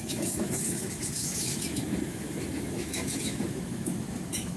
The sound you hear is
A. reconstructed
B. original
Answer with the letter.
A